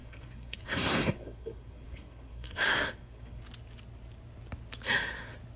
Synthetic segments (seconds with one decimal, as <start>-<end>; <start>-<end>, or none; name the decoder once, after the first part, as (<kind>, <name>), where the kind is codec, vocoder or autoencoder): 0.0-3.4 (codec, SNAC)